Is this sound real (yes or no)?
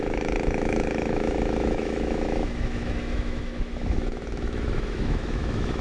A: no